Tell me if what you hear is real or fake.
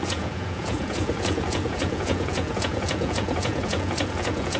fake